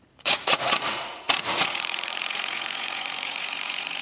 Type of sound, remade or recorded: remade